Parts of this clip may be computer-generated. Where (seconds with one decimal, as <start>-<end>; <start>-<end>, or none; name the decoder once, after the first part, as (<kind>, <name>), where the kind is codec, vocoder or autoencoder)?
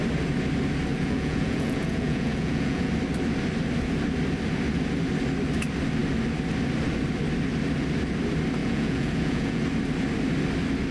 0.9-2.9 (vocoder, Vocos); 8.6-9.6